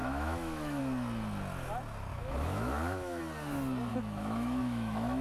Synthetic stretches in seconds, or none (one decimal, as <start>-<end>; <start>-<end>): 0.0-0.8; 2.1-3.2; 3.9-5.2